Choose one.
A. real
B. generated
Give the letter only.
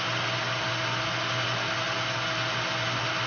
A